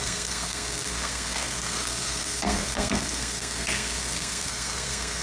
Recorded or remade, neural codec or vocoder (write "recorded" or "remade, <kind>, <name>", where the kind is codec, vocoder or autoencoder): remade, codec, SNAC